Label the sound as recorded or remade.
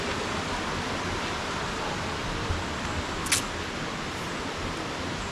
recorded